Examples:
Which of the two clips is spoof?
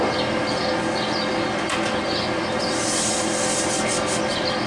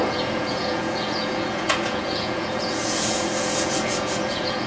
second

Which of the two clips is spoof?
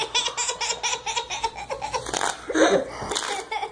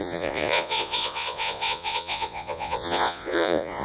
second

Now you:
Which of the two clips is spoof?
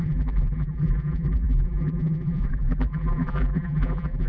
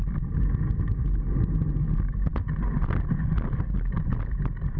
first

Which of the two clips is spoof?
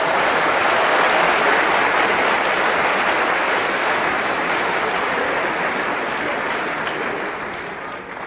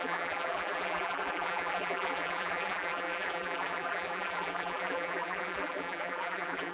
second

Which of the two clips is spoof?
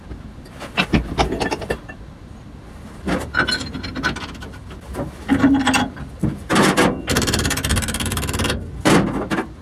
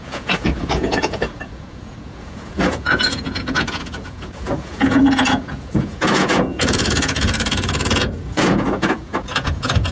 second